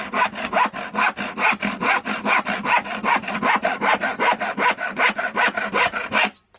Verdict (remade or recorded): recorded